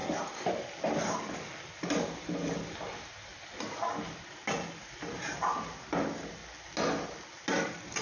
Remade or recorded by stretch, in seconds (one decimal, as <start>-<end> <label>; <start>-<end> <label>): 0.0-2.0 recorded; 2.0-3.3 remade; 3.3-4.1 recorded; 4.1-6.4 remade; 6.4-7.5 recorded; 7.5-8.0 remade